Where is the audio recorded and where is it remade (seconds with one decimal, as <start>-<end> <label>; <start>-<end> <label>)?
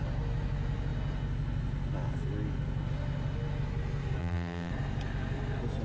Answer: 0.0-4.2 recorded; 4.2-4.7 remade; 4.7-5.8 recorded